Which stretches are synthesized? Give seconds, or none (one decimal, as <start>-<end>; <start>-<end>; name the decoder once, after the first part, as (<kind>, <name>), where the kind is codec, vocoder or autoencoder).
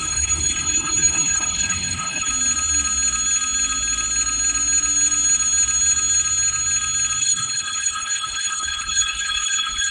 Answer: 0.0-2.3 (codec, HILCodec); 7.2-9.9